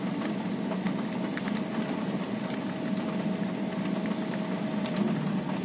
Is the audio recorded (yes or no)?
yes